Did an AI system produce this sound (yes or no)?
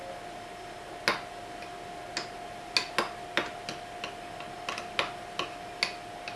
no